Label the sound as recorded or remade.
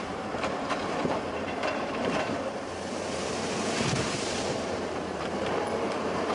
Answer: remade